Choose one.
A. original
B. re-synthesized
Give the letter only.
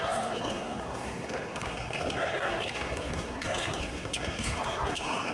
B